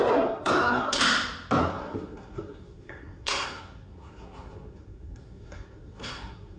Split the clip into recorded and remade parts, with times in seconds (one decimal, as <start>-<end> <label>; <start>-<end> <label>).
0.0-1.0 remade; 1.0-1.6 recorded; 1.6-6.6 remade